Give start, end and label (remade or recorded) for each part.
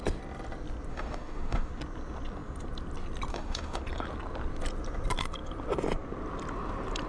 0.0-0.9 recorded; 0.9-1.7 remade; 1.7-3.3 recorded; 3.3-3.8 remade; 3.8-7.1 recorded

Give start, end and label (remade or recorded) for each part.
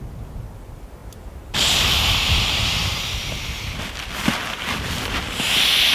0.0-1.0 recorded; 1.0-3.1 remade; 3.1-5.9 recorded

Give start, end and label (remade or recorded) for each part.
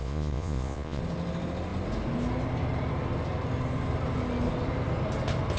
0.0-1.0 remade; 1.0-5.6 recorded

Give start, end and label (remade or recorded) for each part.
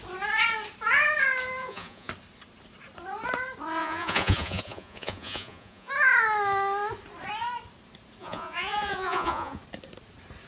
0.0-1.6 recorded; 1.6-2.1 remade; 2.1-3.8 recorded; 3.8-5.9 remade; 5.9-8.2 recorded; 8.2-9.6 remade; 9.6-10.5 recorded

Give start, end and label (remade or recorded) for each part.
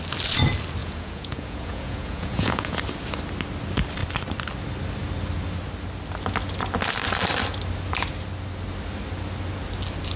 0.0-0.8 recorded; 0.8-2.8 remade; 2.8-10.2 recorded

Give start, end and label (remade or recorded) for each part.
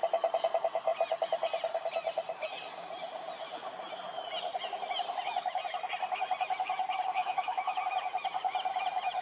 0.0-7.2 recorded; 7.2-7.8 remade; 7.8-9.2 recorded